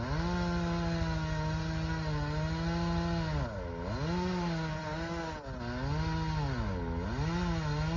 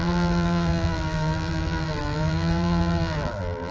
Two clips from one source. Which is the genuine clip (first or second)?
first